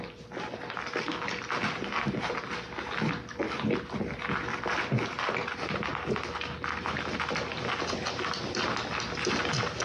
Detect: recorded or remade recorded